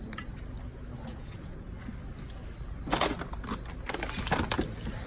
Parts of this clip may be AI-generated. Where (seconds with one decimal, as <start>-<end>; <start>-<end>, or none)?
1.1-1.7